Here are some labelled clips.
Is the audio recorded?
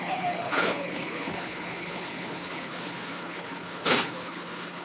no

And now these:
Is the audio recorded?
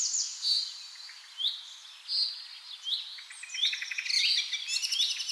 yes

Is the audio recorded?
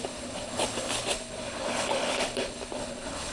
no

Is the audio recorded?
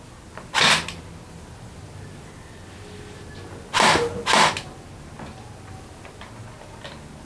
yes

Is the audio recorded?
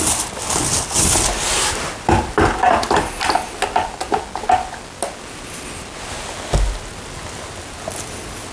yes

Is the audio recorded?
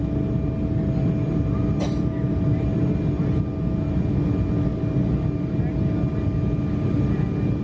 yes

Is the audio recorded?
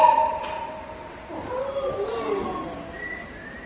yes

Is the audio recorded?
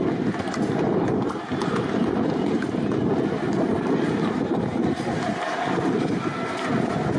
yes